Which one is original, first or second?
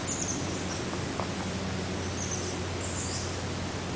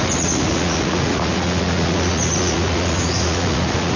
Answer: first